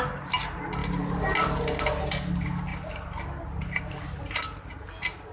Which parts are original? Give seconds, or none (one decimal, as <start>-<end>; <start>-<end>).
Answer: 0.0-5.3